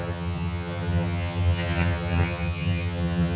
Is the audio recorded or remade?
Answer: remade